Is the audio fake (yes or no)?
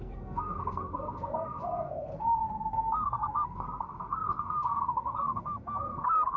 yes